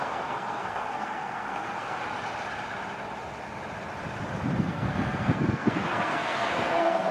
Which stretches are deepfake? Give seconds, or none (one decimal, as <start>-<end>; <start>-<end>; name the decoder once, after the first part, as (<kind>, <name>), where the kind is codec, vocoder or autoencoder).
0.0-2.0 (codec, SNAC); 4.6-7.1